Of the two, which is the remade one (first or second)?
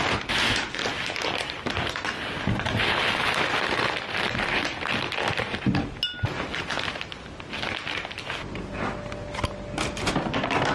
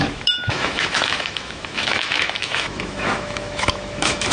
second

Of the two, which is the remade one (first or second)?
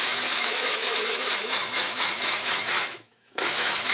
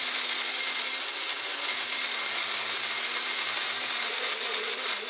first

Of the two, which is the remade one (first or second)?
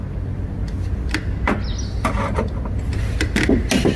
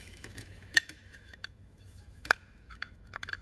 second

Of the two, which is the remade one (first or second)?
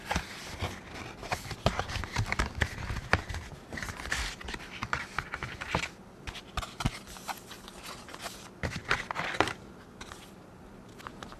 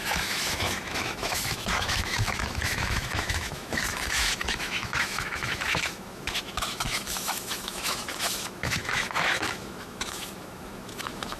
second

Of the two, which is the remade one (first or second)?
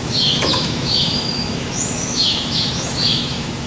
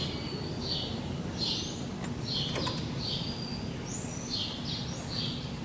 first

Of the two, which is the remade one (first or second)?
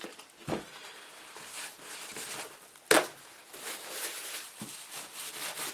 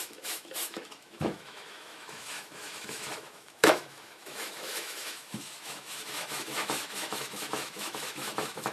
second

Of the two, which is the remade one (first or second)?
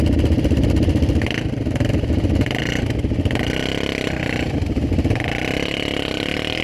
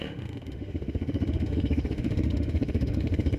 second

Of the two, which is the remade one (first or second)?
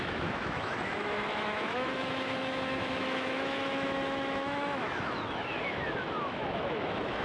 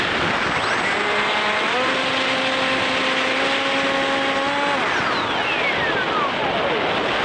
first